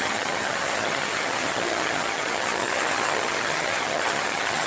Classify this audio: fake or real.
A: fake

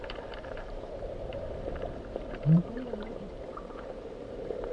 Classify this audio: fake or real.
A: fake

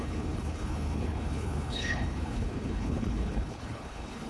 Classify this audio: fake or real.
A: fake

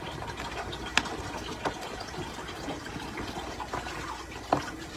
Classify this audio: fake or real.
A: real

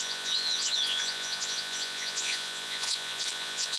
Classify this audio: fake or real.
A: fake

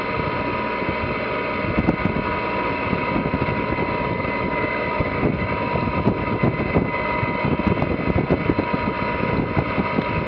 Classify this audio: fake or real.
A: real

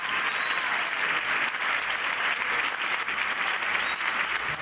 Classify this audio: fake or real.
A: real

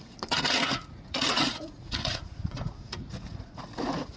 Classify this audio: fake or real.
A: fake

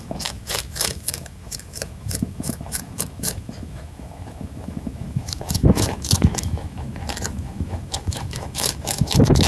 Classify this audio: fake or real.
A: fake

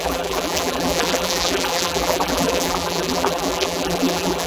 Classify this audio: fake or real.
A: fake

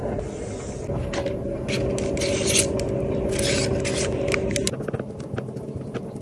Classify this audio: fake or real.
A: real